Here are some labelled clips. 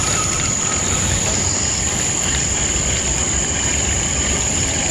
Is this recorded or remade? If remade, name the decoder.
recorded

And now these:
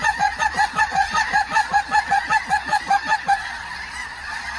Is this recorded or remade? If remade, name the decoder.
remade, vocoder, Vocos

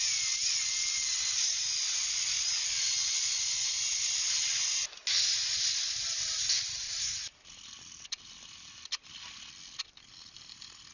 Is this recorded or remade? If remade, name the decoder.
recorded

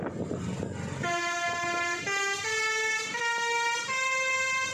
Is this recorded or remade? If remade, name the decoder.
recorded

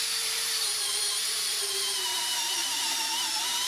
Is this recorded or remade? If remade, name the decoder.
remade, vocoder, BigVGAN v2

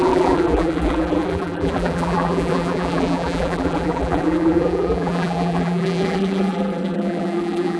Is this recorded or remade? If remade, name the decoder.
remade, vocoder, BigVGAN v2